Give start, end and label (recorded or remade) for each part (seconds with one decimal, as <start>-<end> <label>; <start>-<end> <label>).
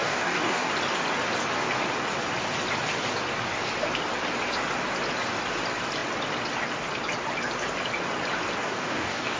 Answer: 0.0-0.7 remade; 0.7-8.6 recorded; 8.6-9.4 remade